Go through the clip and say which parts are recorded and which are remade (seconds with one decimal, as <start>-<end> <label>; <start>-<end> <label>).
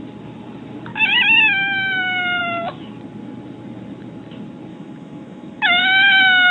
0.0-0.9 recorded; 0.9-2.4 remade; 2.4-4.7 recorded; 4.7-5.8 remade; 5.8-6.5 recorded